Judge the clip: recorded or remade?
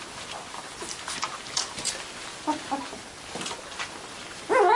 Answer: recorded